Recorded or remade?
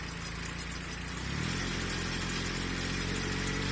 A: recorded